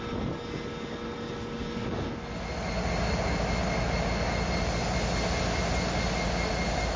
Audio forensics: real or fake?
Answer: real